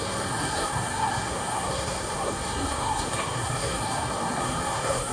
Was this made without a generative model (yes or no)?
no